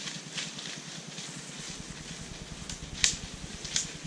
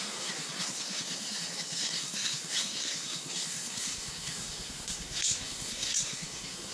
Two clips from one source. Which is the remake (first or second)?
second